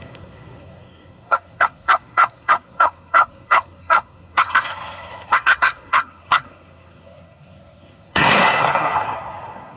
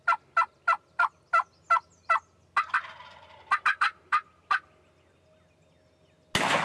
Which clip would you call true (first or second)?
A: second